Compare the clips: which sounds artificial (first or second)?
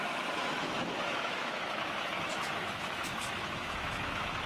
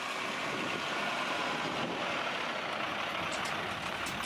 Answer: first